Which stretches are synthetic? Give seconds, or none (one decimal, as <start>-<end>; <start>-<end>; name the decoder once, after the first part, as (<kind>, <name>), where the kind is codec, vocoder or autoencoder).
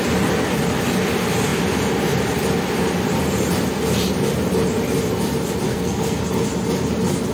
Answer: 5.7-6.2 (codec, SNAC)